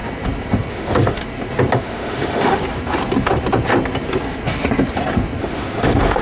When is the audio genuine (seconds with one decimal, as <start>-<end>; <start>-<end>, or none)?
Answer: 0.0-0.7; 1.2-1.8; 2.6-5.4